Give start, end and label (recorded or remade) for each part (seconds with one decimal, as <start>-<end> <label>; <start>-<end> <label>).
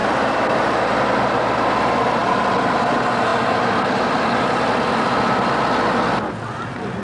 0.0-1.2 remade; 1.2-2.2 recorded; 2.2-2.8 remade; 2.8-3.3 recorded; 3.3-5.8 remade; 5.8-7.0 recorded